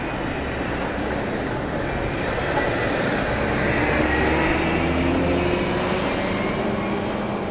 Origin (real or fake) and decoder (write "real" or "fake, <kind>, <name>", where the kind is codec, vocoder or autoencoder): real